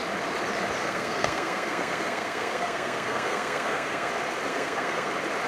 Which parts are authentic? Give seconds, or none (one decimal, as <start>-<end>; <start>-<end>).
0.0-0.8; 4.1-4.5; 5.1-5.5